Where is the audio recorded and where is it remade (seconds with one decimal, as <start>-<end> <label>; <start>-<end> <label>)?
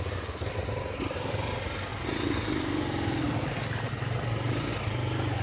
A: 0.0-1.9 recorded; 1.9-4.7 remade; 4.7-5.4 recorded